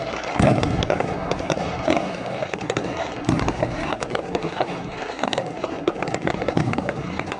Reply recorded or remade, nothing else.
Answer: remade